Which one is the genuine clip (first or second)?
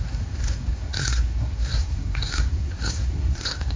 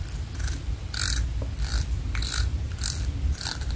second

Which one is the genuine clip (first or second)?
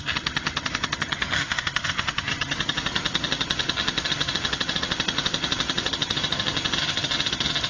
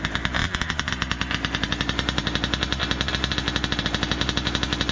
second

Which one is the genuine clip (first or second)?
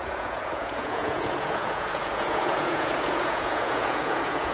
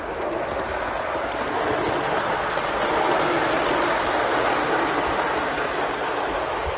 second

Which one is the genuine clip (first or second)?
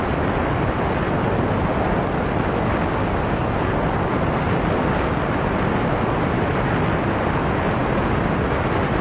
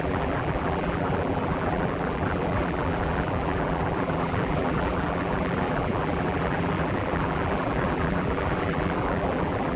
first